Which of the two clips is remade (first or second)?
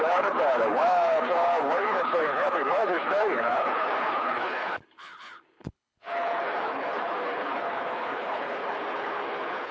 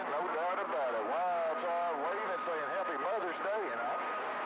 first